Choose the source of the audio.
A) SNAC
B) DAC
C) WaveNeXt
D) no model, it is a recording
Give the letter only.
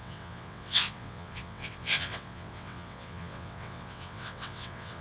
C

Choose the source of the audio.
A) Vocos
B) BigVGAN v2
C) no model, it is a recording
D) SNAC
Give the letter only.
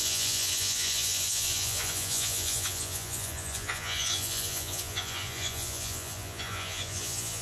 A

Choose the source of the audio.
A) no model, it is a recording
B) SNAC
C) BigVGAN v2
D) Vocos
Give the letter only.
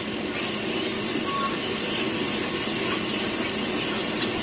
A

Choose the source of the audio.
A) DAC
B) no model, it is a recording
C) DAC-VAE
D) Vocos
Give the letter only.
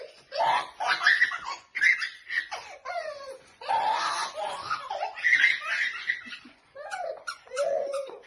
D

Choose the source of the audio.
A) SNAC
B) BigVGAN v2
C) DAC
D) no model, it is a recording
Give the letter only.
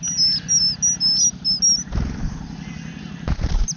D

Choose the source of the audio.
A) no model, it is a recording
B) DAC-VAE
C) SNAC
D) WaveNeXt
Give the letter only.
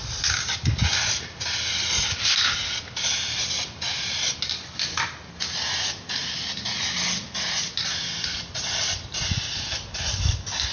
A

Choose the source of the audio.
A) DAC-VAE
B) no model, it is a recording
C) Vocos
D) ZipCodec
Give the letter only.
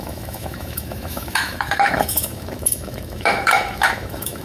A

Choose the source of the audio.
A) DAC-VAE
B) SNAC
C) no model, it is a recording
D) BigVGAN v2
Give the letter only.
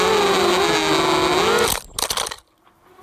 C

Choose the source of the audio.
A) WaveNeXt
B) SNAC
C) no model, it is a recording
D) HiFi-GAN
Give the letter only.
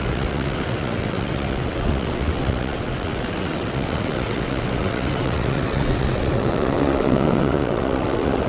A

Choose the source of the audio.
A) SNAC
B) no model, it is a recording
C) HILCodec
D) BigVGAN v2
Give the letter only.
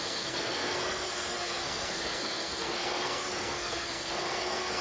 A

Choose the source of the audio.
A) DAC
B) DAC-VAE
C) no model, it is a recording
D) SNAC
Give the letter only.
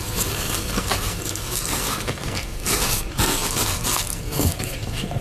D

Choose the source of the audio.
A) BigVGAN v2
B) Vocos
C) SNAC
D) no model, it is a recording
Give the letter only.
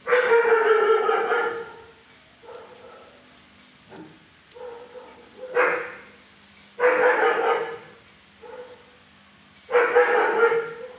D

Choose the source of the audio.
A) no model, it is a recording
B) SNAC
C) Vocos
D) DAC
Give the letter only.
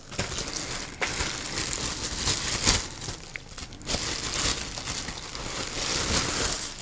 A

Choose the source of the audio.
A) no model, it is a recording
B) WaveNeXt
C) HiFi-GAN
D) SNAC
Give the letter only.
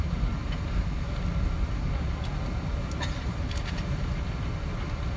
A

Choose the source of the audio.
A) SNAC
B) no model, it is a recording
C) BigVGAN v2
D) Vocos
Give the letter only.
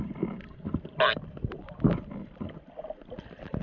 B